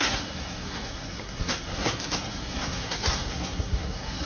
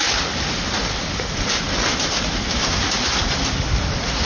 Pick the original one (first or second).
second